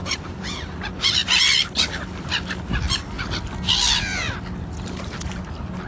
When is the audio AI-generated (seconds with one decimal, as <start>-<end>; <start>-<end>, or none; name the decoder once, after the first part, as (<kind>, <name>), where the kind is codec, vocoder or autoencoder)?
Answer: 0.0-0.6 (vocoder, BigVGAN v2)